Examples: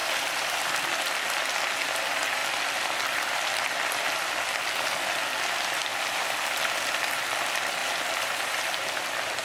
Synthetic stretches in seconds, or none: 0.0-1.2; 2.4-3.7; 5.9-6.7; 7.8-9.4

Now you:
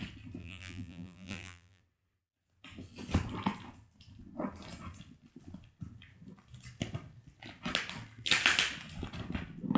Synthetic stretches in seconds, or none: 0.4-1.8

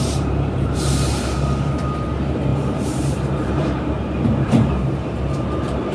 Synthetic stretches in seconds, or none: 0.0-5.9